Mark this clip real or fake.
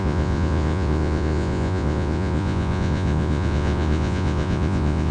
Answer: fake